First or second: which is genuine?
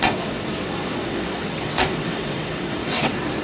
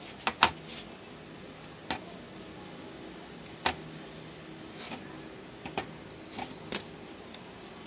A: second